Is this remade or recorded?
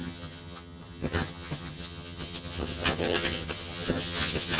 remade